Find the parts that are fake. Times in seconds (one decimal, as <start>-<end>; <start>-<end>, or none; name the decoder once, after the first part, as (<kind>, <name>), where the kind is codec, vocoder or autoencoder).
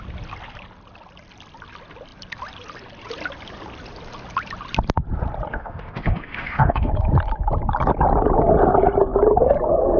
5.5-6.9 (autoencoder, DAC-VAE)